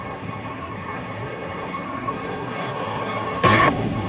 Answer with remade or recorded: remade